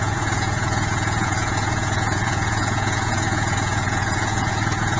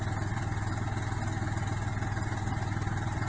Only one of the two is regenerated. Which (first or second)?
first